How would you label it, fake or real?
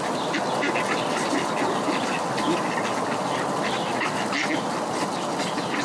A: real